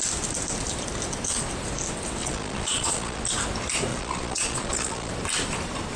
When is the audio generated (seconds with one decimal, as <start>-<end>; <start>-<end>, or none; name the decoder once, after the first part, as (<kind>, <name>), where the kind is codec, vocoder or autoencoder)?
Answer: 2.2-3.2 (vocoder, Vocos); 3.9-5.1